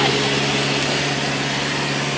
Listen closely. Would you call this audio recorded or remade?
recorded